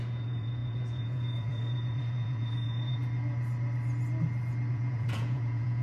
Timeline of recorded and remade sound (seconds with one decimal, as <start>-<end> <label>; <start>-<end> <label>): 0.0-3.0 remade; 3.0-4.7 recorded; 4.7-5.8 remade